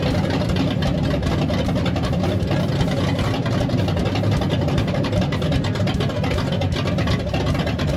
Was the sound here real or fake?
real